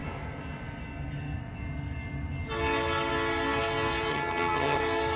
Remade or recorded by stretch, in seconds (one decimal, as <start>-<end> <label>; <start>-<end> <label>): 0.0-4.1 recorded; 4.1-4.8 remade; 4.8-5.2 recorded